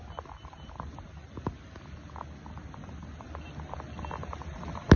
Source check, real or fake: real